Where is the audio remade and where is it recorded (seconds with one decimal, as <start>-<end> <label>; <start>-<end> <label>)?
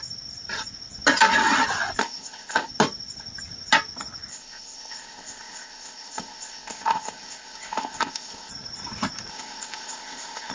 0.0-2.0 recorded; 2.0-2.7 remade; 2.7-4.3 recorded; 4.3-8.5 remade; 8.5-9.3 recorded; 9.3-10.5 remade